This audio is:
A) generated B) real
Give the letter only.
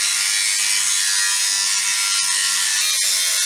B